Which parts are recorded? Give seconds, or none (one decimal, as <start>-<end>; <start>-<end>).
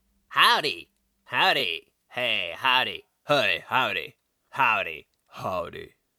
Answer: 0.0-1.6; 3.3-6.2